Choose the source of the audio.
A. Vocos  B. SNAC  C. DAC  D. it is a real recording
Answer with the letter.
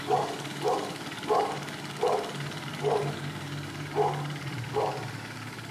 C